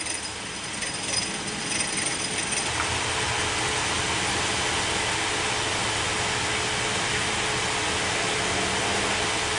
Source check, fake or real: real